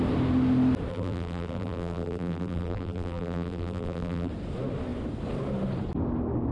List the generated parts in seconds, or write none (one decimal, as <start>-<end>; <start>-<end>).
0.9-4.3